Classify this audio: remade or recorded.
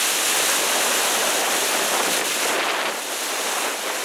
recorded